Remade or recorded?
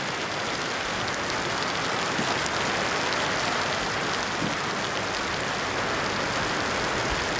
recorded